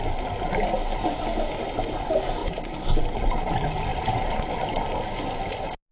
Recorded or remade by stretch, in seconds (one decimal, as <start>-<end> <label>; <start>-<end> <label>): 0.0-5.9 recorded